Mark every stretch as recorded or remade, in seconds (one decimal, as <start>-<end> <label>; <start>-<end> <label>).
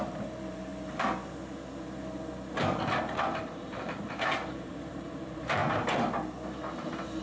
0.0-0.7 remade; 0.7-3.0 recorded; 3.0-5.6 remade; 5.6-7.2 recorded